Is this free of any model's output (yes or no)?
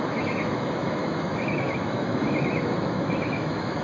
no